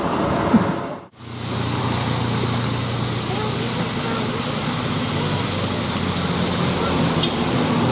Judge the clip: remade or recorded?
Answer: recorded